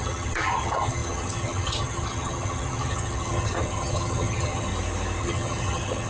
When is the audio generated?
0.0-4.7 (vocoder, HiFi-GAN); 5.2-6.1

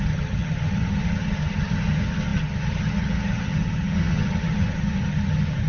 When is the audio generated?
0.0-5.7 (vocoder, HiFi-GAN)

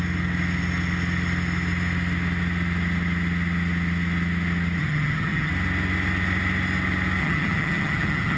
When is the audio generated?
4.8-5.5 (vocoder, HiFi-GAN); 7.2-8.4

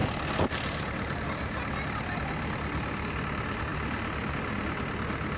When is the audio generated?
none